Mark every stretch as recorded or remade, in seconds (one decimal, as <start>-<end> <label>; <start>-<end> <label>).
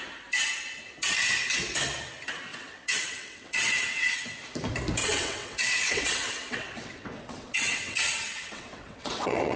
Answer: 0.0-2.5 recorded; 2.5-4.0 remade; 4.0-5.0 recorded; 5.0-9.6 remade